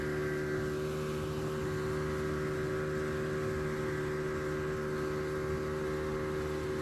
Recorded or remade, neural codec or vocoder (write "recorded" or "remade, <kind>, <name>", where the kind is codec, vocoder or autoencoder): recorded